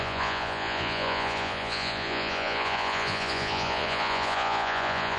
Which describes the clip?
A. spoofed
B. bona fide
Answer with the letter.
A